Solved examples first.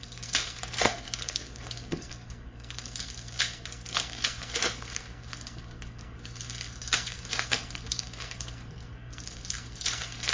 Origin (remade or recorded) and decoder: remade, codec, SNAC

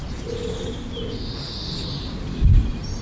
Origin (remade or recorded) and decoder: recorded